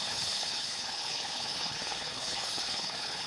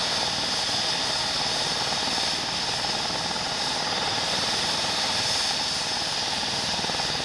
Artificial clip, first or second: first